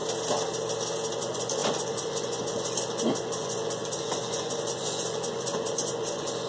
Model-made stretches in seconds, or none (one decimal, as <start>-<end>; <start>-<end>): 1.2-6.5

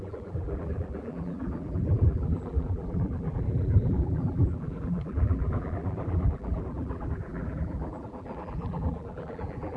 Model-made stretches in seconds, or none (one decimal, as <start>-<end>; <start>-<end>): 0.0-9.8

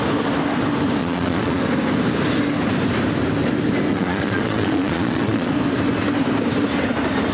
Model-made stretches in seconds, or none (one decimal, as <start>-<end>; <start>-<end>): 1.0-1.6; 3.9-5.5

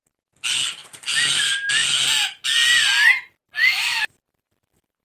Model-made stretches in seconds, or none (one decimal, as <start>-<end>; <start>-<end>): none

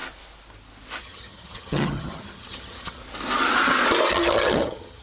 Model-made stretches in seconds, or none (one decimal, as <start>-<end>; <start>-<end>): 1.0-3.0; 4.1-5.0

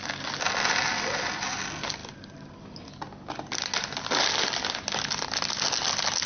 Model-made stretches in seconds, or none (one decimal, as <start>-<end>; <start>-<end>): none

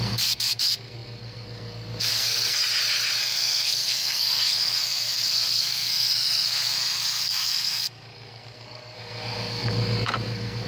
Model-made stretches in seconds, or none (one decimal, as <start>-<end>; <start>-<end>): 0.0-2.6; 3.2-10.7

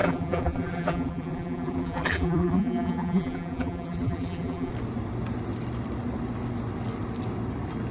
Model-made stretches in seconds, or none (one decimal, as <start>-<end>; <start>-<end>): 0.0-4.7